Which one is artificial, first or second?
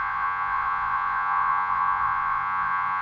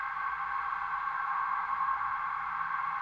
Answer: first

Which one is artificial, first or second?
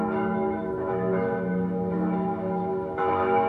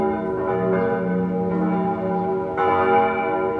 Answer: first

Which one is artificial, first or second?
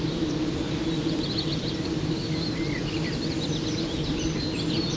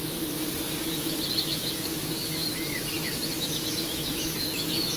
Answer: second